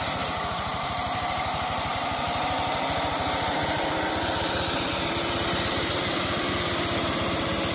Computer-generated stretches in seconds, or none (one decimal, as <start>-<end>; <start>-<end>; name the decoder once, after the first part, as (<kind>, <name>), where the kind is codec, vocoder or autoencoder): none